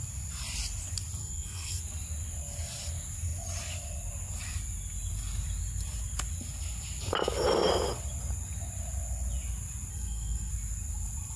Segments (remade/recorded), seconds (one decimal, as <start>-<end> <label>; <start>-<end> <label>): 0.0-1.2 recorded; 1.2-1.8 remade; 1.8-9.9 recorded; 9.9-10.5 remade; 10.5-11.4 recorded